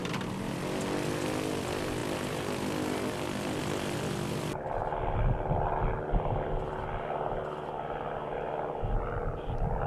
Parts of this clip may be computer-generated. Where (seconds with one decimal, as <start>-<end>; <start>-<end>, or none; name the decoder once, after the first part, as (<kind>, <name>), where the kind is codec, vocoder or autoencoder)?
none